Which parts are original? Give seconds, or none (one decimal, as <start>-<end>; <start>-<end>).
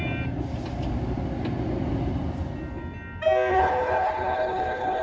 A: 0.0-3.5